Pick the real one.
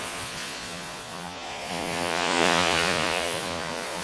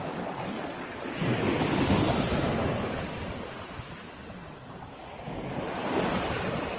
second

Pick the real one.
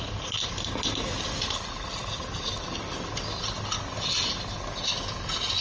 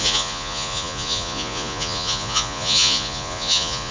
first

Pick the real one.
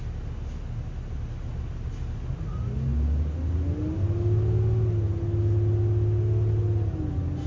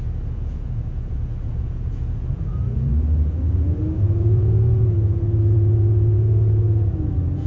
first